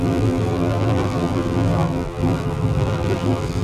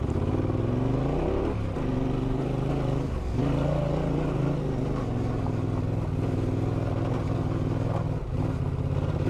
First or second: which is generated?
first